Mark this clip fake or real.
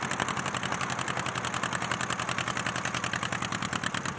real